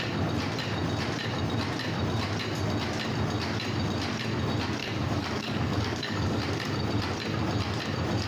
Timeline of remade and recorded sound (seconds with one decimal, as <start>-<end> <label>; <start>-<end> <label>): 0.0-4.8 recorded; 4.8-6.4 remade; 6.4-8.3 recorded